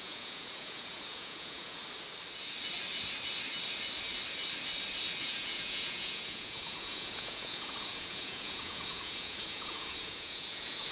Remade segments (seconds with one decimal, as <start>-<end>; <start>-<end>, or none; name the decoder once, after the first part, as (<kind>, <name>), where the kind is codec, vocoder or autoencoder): 0.0-1.8 (vocoder, Vocos); 5.2-10.9